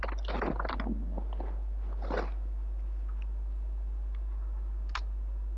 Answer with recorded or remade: recorded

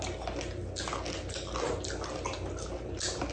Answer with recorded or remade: recorded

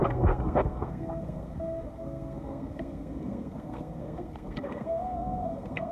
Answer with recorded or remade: remade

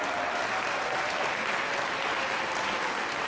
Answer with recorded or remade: recorded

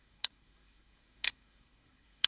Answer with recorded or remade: remade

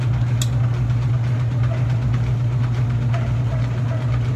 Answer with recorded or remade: recorded